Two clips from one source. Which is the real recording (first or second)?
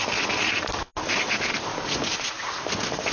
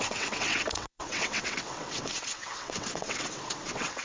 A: first